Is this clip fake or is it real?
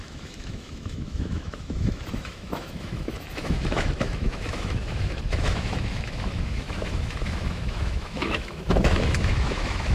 fake